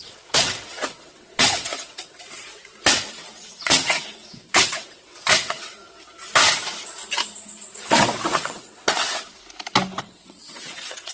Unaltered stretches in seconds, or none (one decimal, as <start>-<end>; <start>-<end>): 2.5-3.1; 5.8-7.8; 9.4-10.0